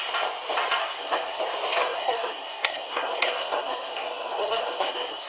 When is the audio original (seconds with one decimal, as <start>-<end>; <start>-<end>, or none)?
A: 0.0-0.8; 1.4-1.8